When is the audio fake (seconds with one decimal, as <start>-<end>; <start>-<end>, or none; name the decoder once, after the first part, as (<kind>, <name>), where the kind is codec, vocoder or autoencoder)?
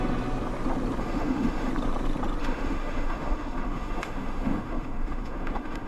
1.0-1.7 (autoencoder, DAC-VAE); 2.4-5.9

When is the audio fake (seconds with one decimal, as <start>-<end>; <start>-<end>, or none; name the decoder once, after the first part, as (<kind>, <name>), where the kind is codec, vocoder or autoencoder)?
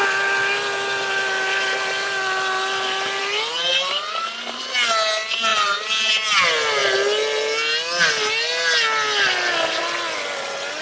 3.2-4.6 (vocoder, BigVGAN v2); 5.5-6.1